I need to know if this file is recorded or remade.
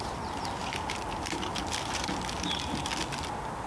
recorded